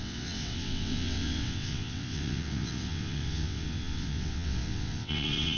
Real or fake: fake